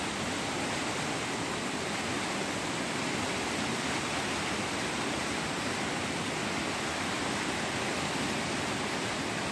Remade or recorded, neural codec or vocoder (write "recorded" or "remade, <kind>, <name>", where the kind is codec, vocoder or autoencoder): recorded